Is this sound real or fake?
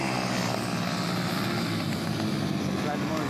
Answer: real